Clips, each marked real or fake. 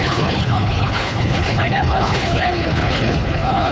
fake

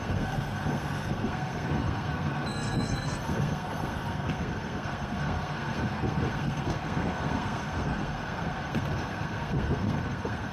fake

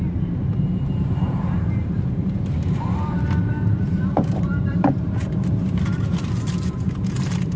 fake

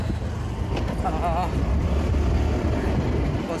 real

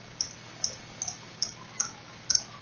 real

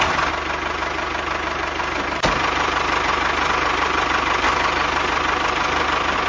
real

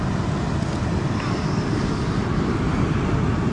real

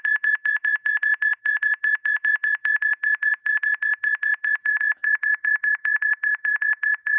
fake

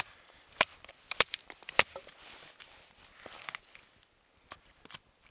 fake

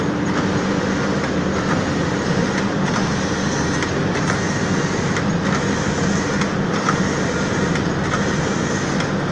real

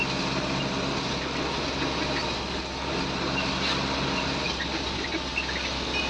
real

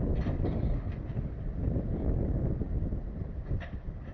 real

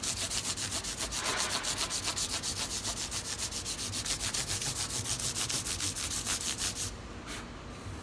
real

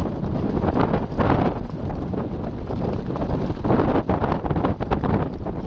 real